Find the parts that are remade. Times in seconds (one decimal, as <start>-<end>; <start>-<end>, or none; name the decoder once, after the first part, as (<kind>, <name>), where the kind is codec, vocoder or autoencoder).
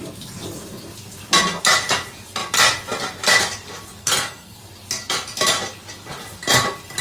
4.0-4.6 (codec, SNAC)